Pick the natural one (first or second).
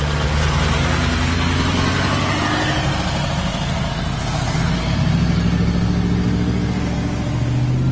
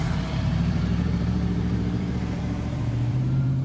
first